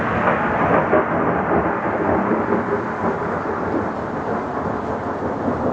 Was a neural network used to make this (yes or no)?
no